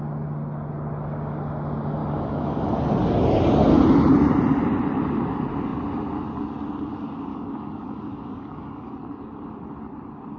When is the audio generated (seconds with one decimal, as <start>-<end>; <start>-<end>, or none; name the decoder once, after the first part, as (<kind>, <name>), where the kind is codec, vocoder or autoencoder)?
2.0-2.7 (codec, DAC); 7.3-8.9